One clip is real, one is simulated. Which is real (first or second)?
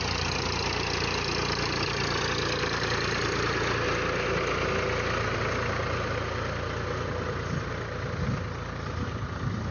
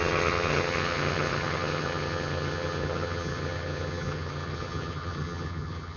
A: first